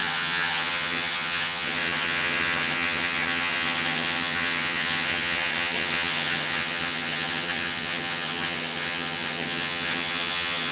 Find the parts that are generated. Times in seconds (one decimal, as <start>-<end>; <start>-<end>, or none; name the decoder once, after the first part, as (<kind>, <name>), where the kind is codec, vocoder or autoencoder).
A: 0.0-10.7 (vocoder, HiFi-GAN)